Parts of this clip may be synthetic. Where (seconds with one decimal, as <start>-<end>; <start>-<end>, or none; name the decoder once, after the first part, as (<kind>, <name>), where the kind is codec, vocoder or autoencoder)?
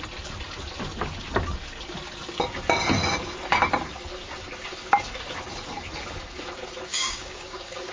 6.9-7.9 (codec, DAC)